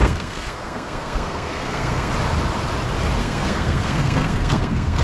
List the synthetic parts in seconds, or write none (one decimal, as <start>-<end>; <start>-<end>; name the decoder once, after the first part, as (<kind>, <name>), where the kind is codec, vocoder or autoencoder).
0.0-2.1 (codec, SNAC); 3.2-5.0